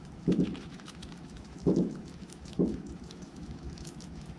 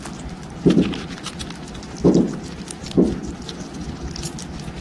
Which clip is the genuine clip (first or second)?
second